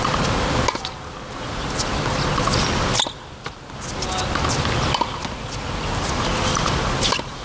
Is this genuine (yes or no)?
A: yes